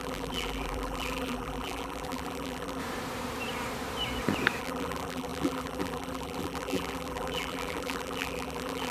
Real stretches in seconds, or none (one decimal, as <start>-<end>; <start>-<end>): 2.8-4.6